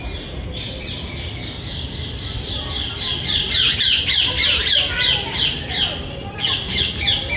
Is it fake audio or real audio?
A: real